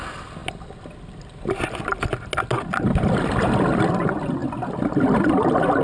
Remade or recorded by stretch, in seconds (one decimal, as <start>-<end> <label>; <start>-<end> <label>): 0.0-5.8 recorded